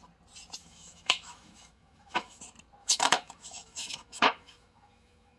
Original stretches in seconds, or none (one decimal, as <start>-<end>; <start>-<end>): 0.0-0.6; 2.4-2.8